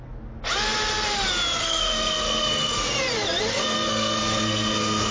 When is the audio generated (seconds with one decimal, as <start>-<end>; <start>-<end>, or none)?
1.6-2.8; 3.5-5.1